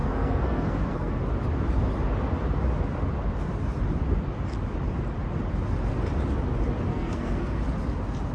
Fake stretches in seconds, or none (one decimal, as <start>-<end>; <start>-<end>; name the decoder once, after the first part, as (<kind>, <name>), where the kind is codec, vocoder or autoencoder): 0.0-1.2 (codec, SNAC); 6.9-7.6